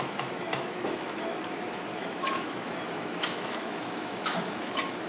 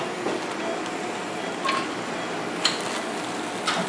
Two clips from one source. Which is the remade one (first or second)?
first